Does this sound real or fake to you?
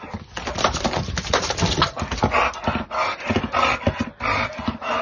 real